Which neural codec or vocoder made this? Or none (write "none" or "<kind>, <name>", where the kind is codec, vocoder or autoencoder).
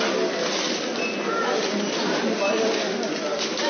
none